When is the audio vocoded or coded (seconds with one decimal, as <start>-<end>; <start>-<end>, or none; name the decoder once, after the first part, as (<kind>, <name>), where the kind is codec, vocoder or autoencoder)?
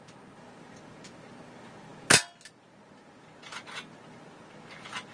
none